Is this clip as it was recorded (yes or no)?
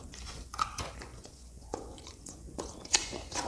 no